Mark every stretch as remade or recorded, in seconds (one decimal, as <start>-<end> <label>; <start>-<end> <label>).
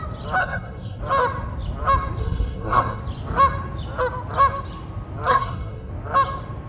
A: 0.0-0.4 recorded; 0.4-1.0 remade; 1.0-2.2 recorded; 2.2-3.0 remade; 3.0-5.3 recorded; 5.3-5.9 remade; 5.9-6.7 recorded